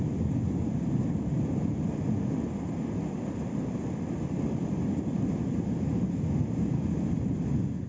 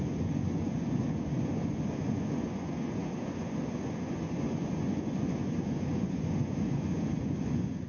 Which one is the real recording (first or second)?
first